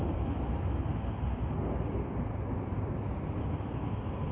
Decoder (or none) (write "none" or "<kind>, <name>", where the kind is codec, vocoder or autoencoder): none